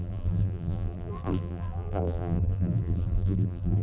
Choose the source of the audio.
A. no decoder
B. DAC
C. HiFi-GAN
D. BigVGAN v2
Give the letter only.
D